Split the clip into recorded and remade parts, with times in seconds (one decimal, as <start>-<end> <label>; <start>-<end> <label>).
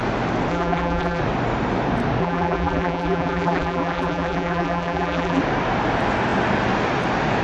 0.0-0.5 recorded; 0.5-1.2 remade; 1.2-2.2 recorded; 2.2-5.4 remade; 5.4-7.4 recorded